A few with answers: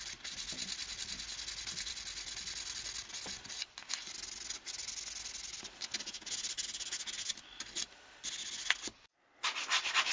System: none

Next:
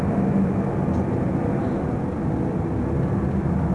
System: none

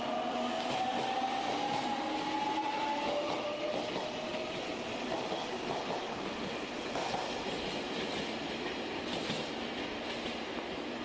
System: none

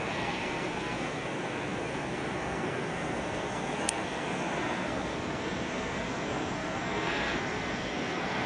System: codec, SNAC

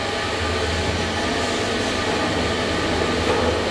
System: none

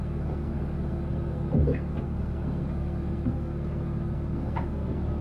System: codec, SNAC